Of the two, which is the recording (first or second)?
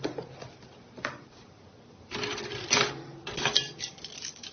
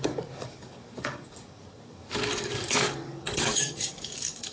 first